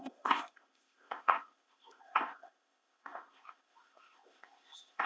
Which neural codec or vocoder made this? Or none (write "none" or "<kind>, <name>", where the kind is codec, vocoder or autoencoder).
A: codec, ZipCodec